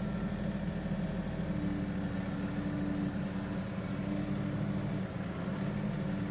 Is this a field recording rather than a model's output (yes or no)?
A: yes